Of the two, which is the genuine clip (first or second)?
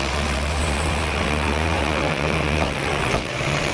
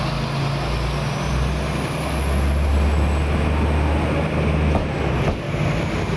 second